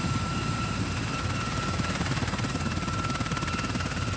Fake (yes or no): yes